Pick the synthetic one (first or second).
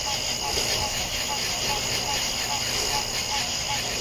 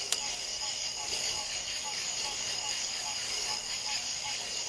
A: second